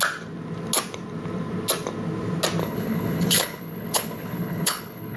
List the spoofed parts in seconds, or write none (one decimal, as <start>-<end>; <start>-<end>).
2.6-5.2